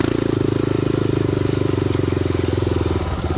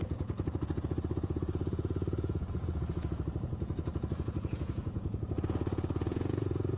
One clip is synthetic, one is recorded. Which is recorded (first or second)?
first